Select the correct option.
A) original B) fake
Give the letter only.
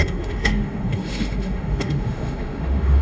B